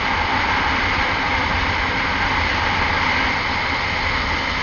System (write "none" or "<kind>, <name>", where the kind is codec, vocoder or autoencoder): none